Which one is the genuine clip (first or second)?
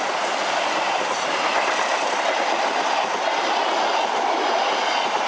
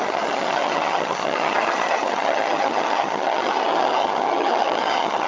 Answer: first